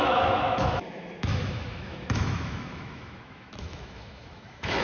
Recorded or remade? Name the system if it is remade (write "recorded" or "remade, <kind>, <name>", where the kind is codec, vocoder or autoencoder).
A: remade, autoencoder, DAC-VAE